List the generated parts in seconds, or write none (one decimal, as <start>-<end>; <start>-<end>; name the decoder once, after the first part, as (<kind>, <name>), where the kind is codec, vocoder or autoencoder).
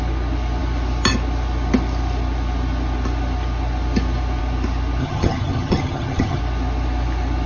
5.0-6.4 (vocoder, HiFi-GAN)